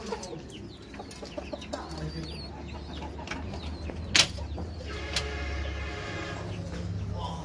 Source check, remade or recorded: recorded